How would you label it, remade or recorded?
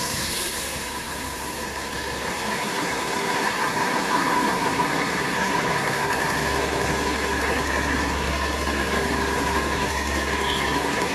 remade